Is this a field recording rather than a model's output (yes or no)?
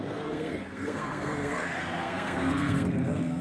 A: no